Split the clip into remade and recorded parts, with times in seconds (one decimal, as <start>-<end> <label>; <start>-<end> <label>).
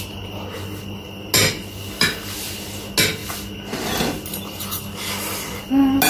0.0-6.1 recorded